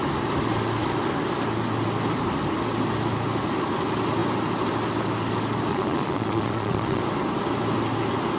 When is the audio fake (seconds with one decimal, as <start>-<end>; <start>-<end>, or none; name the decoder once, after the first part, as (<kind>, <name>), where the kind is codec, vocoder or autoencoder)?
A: 5.7-7.0 (vocoder, Vocos)

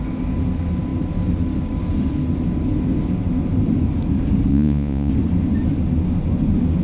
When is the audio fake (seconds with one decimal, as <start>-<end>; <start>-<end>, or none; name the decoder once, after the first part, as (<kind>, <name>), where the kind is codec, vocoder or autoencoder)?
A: 4.5-5.1 (vocoder, Vocos)